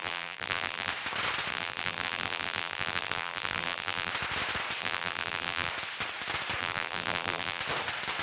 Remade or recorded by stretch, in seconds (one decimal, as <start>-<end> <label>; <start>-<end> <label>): 0.0-0.9 remade; 0.9-1.5 recorded; 1.5-4.1 remade; 4.1-4.8 recorded; 4.8-5.7 remade; 5.7-6.6 recorded; 6.6-7.6 remade; 7.6-8.2 recorded